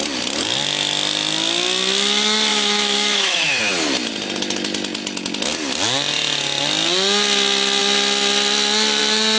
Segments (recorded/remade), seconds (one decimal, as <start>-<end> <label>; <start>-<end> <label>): 0.0-2.5 recorded; 2.5-3.6 remade; 3.6-9.4 recorded